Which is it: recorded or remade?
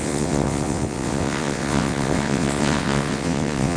remade